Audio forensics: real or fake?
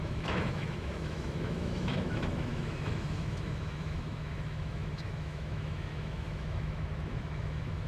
fake